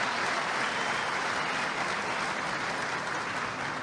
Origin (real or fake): real